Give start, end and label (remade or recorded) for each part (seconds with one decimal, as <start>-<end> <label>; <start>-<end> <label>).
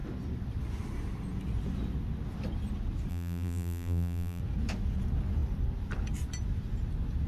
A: 0.0-3.1 recorded; 3.1-4.4 remade; 4.4-7.3 recorded